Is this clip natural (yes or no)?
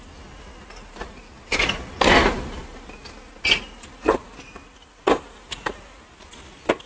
yes